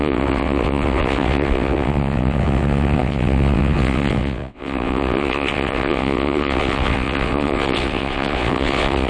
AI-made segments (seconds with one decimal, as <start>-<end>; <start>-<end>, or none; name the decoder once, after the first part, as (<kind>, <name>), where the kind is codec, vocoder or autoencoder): 0.0-9.1 (vocoder, WaveNeXt)